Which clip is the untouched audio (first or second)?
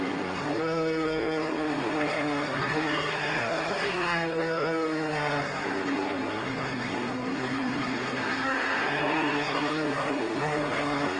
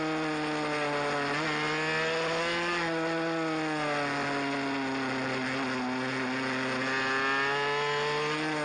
second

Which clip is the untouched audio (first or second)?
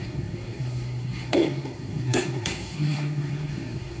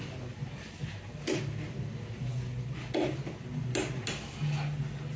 second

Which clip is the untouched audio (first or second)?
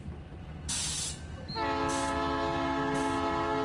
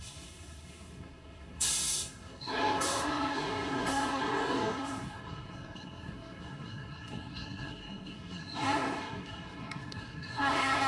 first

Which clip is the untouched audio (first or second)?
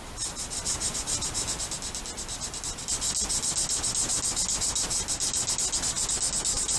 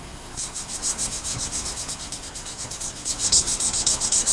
first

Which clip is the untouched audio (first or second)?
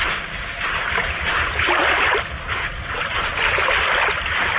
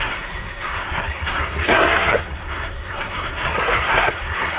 first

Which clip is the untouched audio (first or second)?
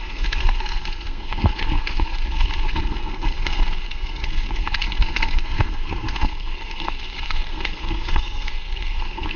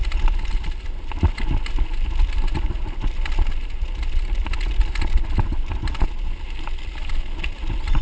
second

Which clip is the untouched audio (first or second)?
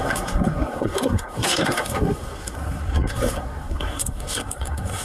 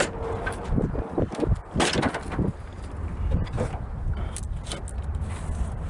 second